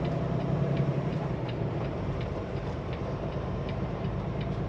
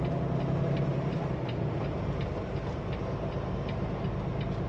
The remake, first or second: first